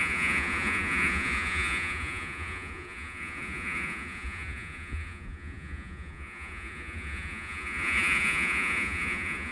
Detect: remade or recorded remade